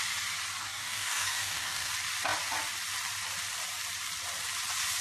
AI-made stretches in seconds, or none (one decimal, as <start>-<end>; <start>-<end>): 0.6-1.9